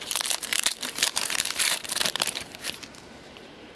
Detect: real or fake fake